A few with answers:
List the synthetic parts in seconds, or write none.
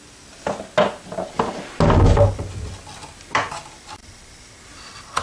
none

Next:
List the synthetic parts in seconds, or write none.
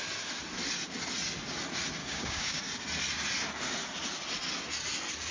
2.0-2.6 (codec, DAC)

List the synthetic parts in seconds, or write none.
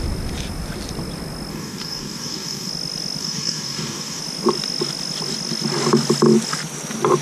1.5-2.7 (codec, DAC); 3.2-4.2